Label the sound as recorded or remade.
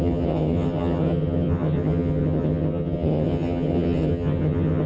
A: remade